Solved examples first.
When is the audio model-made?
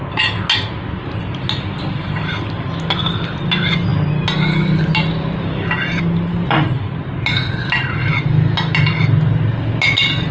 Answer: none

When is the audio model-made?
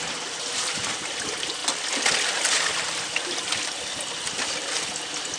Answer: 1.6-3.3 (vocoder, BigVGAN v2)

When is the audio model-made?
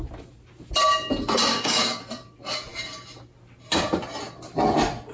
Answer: 1.5-2.0 (codec, DAC)